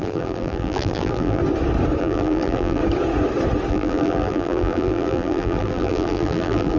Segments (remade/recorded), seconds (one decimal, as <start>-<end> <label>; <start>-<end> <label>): 0.0-1.4 remade; 1.4-2.0 recorded; 2.0-2.8 remade; 2.8-3.7 recorded; 3.7-6.8 remade